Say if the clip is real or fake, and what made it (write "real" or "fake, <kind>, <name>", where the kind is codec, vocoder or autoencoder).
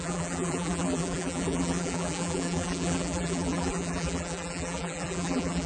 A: fake, vocoder, BigVGAN v2